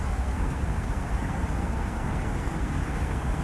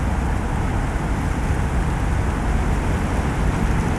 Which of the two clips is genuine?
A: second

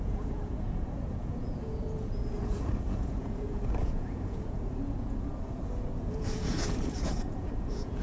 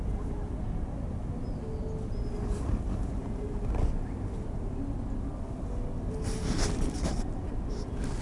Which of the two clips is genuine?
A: second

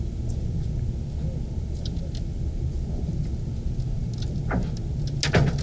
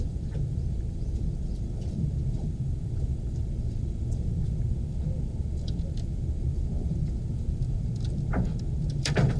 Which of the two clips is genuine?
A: first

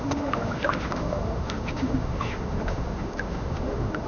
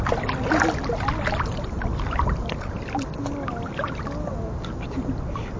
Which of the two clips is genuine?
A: second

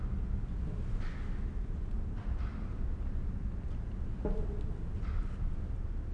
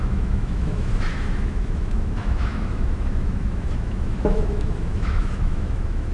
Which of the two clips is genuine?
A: first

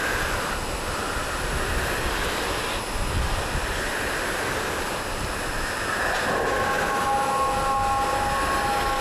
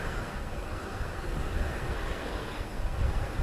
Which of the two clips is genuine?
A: first